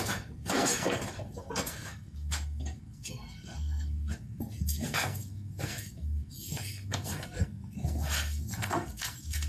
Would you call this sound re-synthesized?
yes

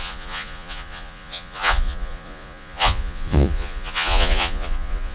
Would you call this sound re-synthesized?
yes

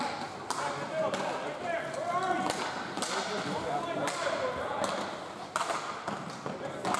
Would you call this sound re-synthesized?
no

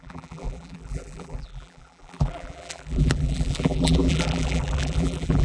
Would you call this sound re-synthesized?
yes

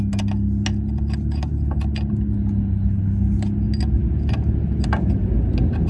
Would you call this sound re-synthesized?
no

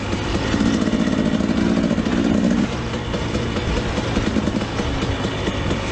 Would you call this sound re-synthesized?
no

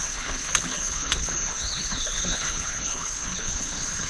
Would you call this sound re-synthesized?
yes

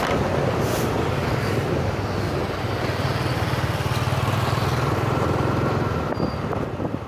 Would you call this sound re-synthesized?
no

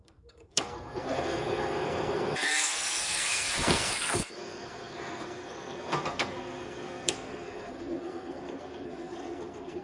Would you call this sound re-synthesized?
yes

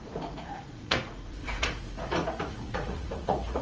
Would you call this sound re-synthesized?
yes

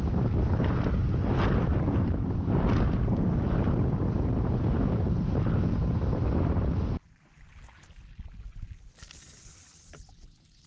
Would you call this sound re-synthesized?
no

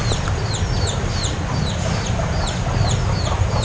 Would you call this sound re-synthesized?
no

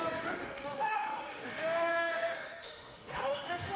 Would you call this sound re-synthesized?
yes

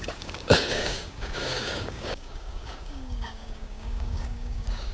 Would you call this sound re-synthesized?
yes